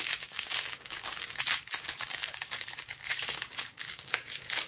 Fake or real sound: fake